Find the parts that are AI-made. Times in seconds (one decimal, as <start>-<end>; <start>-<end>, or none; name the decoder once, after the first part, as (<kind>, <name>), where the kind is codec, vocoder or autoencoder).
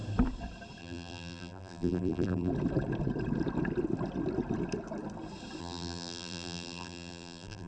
0.8-2.5 (vocoder, BigVGAN v2); 5.6-7.7